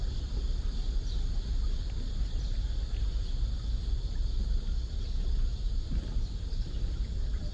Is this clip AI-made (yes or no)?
no